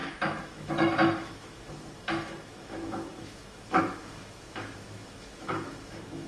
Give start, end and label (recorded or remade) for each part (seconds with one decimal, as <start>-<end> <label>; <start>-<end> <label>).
0.0-6.3 remade